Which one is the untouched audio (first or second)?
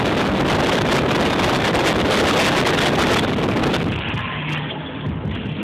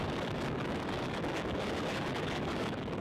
first